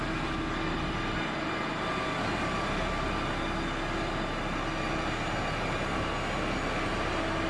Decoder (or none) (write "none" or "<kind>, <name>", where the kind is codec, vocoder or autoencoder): none